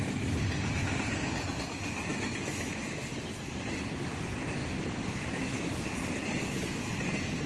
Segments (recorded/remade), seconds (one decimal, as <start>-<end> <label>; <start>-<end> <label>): 0.0-7.5 remade